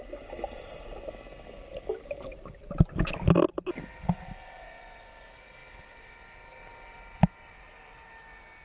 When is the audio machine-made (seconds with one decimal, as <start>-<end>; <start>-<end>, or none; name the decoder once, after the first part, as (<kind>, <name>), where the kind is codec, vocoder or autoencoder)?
none